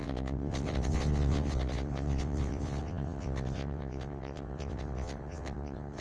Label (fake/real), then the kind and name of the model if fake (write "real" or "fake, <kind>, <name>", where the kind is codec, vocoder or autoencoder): fake, vocoder, WaveNeXt